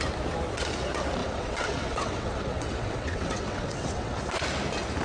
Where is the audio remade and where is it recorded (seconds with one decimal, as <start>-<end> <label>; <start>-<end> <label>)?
0.0-1.2 recorded; 1.2-4.2 remade; 4.2-5.0 recorded